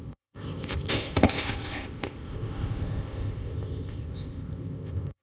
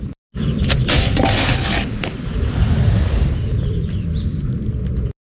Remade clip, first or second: first